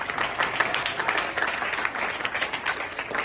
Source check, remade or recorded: recorded